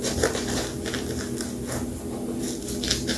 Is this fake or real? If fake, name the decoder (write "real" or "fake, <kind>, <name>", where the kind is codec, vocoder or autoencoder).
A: real